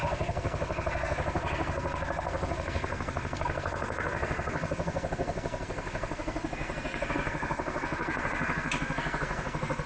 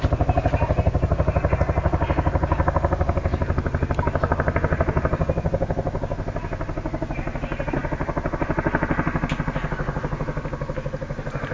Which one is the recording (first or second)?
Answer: second